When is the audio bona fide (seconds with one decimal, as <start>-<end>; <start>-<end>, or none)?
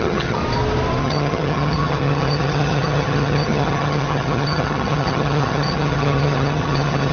0.4-1.0